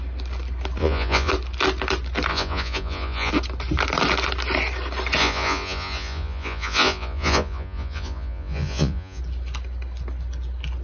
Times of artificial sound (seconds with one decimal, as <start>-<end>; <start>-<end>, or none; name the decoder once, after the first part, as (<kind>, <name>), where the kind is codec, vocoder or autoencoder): 0.8-1.3 (vocoder, Vocos); 2.3-3.3; 5.2-9.2